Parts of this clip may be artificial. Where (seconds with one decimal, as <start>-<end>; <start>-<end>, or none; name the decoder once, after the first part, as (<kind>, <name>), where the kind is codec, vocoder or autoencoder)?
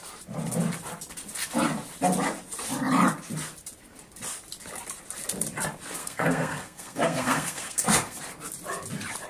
6.0-8.2 (codec, SNAC)